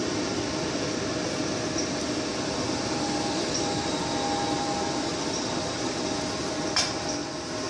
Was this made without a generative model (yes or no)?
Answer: yes